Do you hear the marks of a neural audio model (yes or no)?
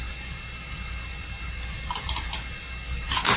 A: no